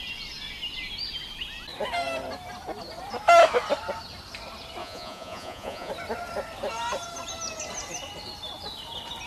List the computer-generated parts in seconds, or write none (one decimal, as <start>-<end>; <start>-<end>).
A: 4.8-5.9